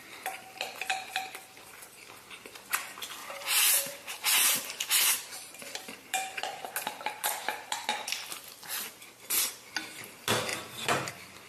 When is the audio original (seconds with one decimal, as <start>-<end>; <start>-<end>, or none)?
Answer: 0.0-3.2; 6.4-7.4; 8.2-11.5